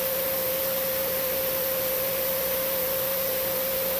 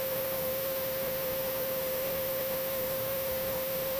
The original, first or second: first